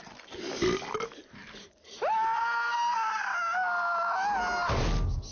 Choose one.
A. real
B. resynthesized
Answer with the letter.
A